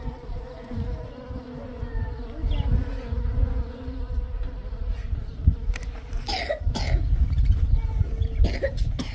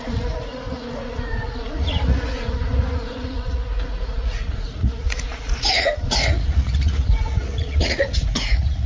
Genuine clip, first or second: first